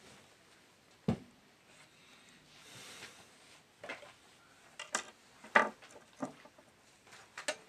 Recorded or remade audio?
recorded